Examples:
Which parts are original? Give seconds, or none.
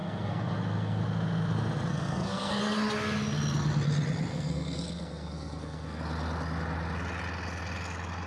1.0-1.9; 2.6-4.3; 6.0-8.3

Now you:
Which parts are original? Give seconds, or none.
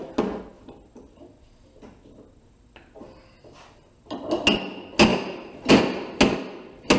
0.0-5.1; 5.7-7.0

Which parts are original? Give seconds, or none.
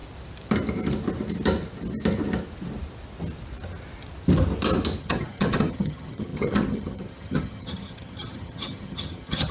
0.0-5.0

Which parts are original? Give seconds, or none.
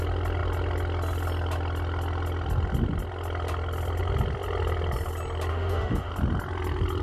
0.0-5.5; 6.1-7.0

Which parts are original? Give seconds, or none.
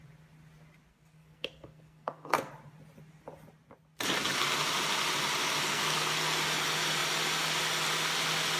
0.0-0.9; 2.5-5.6; 6.2-8.6